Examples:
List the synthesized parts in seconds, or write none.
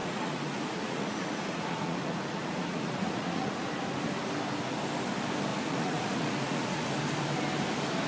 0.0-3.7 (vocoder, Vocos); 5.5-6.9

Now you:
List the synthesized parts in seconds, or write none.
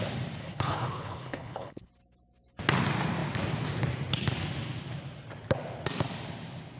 0.4-1.9 (codec, HILCodec)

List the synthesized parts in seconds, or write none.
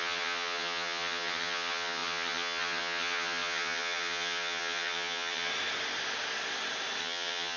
0.0-5.5 (vocoder, HiFi-GAN); 7.0-7.6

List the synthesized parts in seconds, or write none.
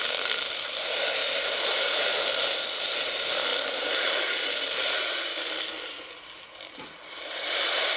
none